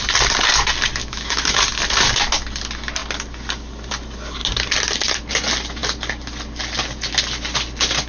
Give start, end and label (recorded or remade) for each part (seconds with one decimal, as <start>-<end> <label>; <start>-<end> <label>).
0.0-1.0 recorded; 1.0-1.6 remade; 1.6-8.1 recorded